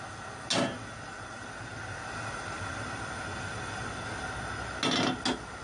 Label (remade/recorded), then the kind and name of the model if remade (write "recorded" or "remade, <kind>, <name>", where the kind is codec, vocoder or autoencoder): recorded